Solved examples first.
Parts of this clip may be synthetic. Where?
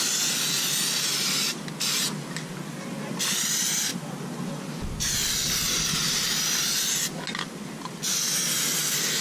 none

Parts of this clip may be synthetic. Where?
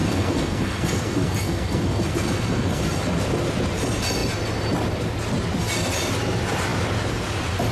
0.0-2.8 (codec, SNAC)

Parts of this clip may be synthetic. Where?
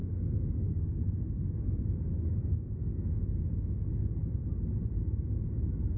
0.0-1.8 (codec, SNAC); 2.4-3.2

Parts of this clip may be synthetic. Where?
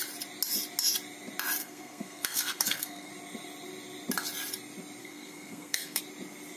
1.6-3.1 (codec, SNAC); 5.0-6.0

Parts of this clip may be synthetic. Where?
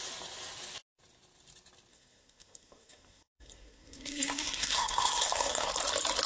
1.9-5.7 (codec, SNAC)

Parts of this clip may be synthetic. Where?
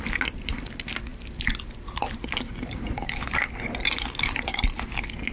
none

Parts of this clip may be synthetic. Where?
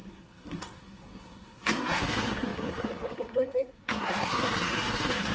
0.0-5.3 (codec, SNAC)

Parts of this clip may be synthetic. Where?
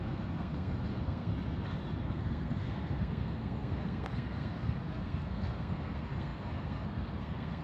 0.0-1.3 (codec, SNAC); 2.0-7.6